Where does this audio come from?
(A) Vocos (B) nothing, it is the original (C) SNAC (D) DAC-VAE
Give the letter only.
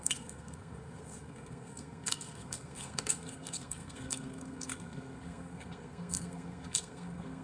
C